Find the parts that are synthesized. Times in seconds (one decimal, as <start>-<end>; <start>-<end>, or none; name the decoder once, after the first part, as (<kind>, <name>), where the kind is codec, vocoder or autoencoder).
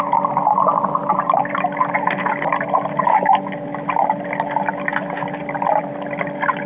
none